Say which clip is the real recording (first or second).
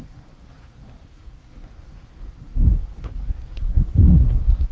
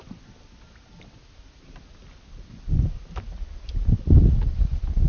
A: second